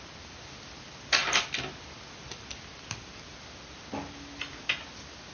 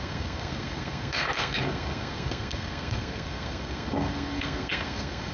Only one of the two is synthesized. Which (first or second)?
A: second